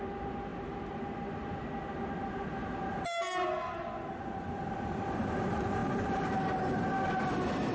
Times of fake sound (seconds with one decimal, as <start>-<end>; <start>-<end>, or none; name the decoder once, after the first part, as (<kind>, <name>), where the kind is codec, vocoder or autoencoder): 5.8-6.3 (vocoder, BigVGAN v2)